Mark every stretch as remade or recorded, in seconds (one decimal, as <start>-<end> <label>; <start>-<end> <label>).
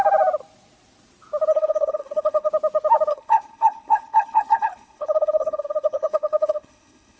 0.0-1.5 recorded; 1.5-2.5 remade; 2.5-3.1 recorded; 3.1-7.2 remade